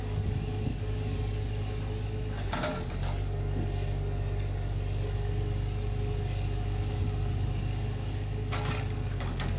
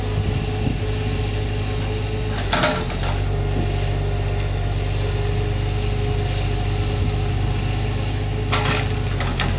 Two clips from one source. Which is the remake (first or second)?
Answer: first